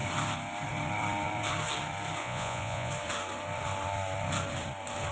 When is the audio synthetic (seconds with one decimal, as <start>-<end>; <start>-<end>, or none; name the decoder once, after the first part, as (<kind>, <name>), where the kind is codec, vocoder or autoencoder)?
2.2-2.9 (vocoder, Vocos)